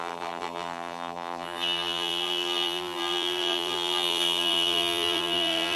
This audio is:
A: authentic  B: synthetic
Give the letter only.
B